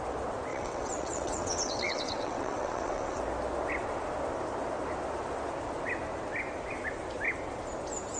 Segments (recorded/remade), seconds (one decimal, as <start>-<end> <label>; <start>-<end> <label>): 0.0-0.5 recorded; 0.5-3.2 remade; 3.2-8.2 recorded